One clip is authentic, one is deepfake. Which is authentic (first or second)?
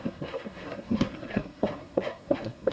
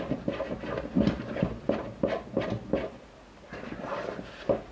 second